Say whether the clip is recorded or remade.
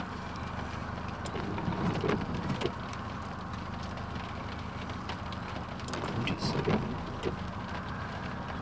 recorded